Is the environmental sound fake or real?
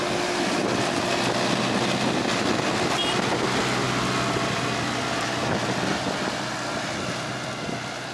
real